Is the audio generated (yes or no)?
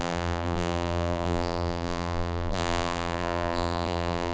yes